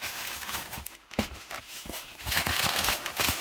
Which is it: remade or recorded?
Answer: remade